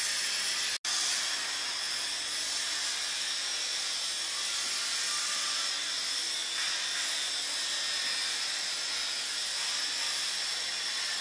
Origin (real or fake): real